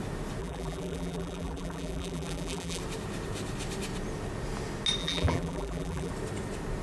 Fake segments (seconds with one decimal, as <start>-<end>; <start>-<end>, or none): 0.4-2.8; 5.0-6.1